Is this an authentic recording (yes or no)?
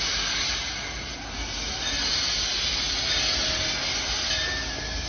yes